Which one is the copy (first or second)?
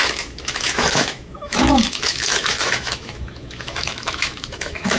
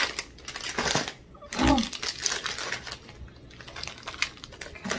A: first